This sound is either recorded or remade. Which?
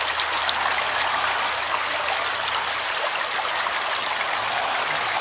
recorded